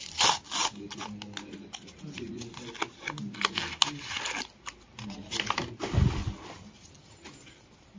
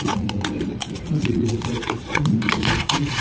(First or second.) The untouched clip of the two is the first